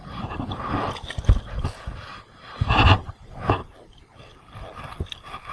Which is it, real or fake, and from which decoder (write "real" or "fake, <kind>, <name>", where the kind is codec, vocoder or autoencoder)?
real